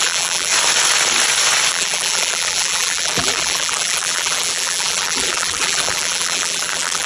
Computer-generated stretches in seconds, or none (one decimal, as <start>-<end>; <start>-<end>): 0.0-0.5; 1.7-7.1